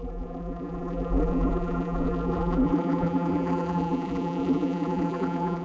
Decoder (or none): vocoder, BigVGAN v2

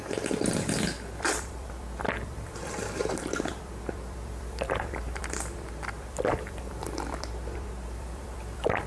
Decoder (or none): vocoder, BigVGAN v2